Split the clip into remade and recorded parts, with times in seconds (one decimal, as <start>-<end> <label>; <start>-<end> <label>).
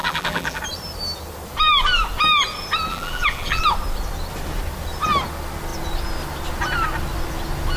0.0-0.6 remade; 0.6-2.9 recorded; 2.9-3.6 remade; 3.6-7.8 recorded